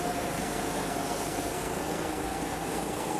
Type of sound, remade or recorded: remade